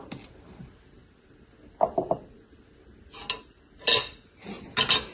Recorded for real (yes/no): yes